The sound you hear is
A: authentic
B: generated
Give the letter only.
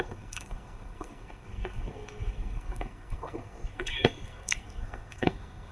B